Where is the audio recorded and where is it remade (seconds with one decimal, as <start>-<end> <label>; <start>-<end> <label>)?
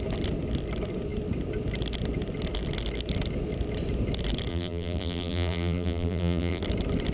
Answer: 0.0-4.5 recorded; 4.5-6.6 remade; 6.6-7.1 recorded